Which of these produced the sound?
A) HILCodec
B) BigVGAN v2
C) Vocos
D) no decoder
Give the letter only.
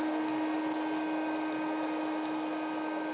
D